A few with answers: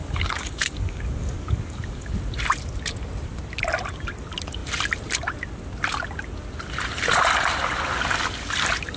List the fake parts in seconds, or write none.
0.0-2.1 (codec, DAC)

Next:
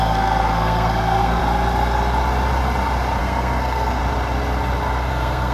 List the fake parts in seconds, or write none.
0.0-1.4 (codec, SNAC); 3.2-4.0; 5.1-5.5

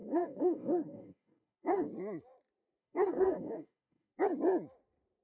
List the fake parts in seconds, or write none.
0.0-1.9 (codec, DAC); 2.8-4.2

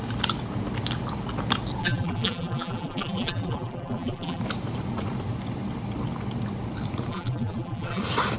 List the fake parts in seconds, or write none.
1.8-4.4 (vocoder, BigVGAN v2); 7.1-8.0

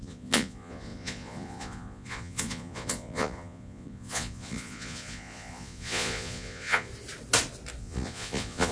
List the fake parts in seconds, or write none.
0.0-6.9 (vocoder, Vocos); 7.8-8.7

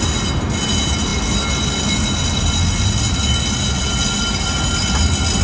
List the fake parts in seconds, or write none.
none

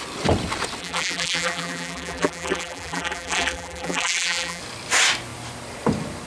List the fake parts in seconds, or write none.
0.8-4.6 (vocoder, BigVGAN v2)